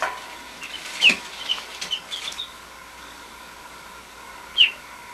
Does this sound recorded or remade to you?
remade